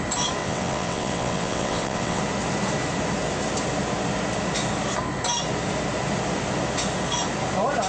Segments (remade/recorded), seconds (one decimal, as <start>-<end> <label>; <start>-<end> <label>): 0.0-0.4 recorded; 0.4-2.2 remade; 2.2-7.9 recorded

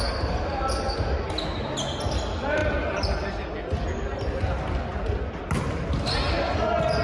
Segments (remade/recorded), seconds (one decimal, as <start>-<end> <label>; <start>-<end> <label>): 0.0-7.0 recorded

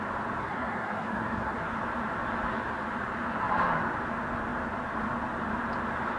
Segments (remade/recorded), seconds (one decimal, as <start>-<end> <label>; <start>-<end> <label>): 0.0-0.4 recorded; 0.4-1.8 remade; 1.8-6.2 recorded

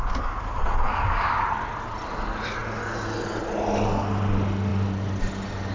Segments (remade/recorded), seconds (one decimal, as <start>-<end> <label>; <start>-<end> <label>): 0.0-5.7 recorded

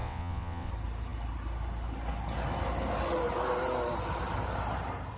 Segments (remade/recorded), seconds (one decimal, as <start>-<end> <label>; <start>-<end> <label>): 0.0-0.7 remade; 0.7-5.2 recorded

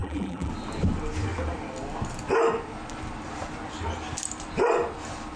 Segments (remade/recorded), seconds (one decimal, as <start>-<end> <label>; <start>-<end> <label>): 0.0-0.5 remade; 0.5-5.4 recorded